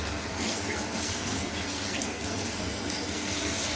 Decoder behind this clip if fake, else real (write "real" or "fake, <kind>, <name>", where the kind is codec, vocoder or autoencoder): fake, codec, SNAC